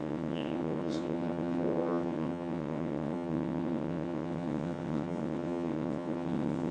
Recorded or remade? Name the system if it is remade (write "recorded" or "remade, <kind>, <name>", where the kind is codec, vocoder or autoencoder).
remade, vocoder, WaveNeXt